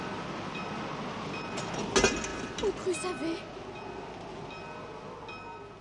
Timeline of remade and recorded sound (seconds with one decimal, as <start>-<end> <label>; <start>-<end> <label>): 0.0-5.8 recorded